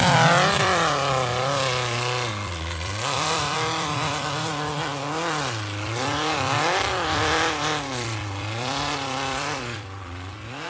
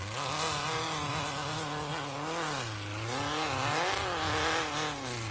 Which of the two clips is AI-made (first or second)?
first